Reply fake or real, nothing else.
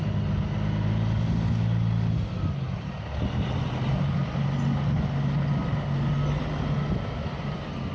real